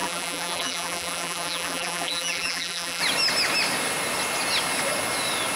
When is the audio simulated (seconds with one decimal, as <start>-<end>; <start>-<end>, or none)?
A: 0.0-3.0